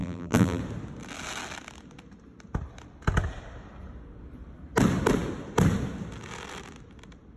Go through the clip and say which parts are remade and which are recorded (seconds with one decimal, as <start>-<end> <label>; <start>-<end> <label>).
0.0-0.6 remade; 0.6-7.4 recorded